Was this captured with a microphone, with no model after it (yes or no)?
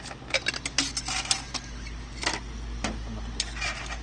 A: yes